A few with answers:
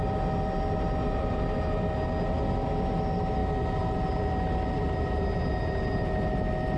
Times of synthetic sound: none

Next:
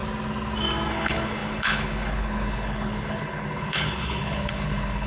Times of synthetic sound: 0.9-5.1 (codec, HILCodec)

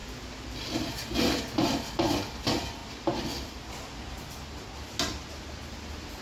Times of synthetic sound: 1.3-2.8 (vocoder, BigVGAN v2)

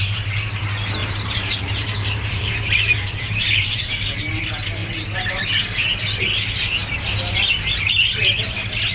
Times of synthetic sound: 1.0-4.3 (vocoder, BigVGAN v2)

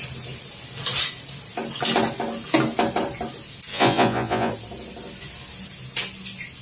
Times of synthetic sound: 3.7-4.5 (vocoder, Vocos)

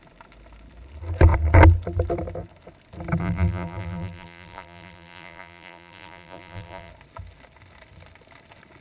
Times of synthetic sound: 3.2-6.9 (vocoder, BigVGAN v2)